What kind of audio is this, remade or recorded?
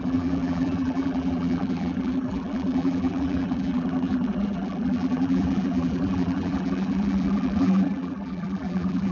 remade